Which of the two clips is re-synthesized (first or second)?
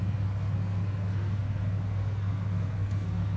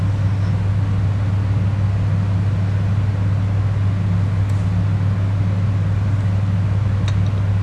first